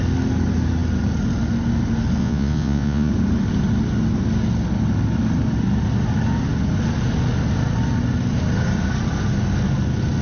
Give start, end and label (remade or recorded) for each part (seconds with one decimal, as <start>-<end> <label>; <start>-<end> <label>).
0.0-2.2 recorded; 2.2-3.1 remade; 3.1-10.2 recorded